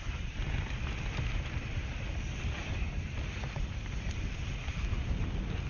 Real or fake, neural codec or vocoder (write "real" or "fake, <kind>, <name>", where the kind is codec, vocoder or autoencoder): real